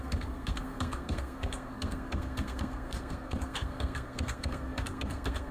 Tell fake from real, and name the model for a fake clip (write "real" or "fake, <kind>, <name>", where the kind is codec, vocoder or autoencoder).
fake, codec, SNAC